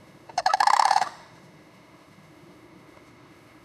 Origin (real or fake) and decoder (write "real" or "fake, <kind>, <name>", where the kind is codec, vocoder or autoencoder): fake, autoencoder, DAC-VAE